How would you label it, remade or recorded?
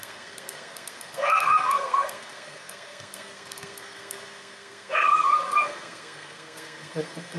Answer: remade